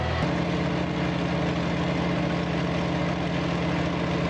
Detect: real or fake real